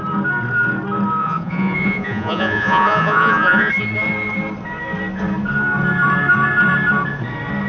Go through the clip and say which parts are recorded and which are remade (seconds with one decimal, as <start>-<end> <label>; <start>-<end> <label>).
0.0-1.2 recorded; 1.2-3.7 remade; 3.7-7.7 recorded